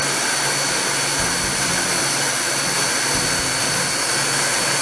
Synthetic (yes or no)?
no